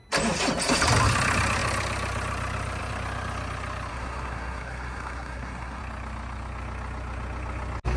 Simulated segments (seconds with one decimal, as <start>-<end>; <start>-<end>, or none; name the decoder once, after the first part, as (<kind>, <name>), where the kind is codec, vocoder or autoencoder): 3.9-5.8 (codec, SNAC)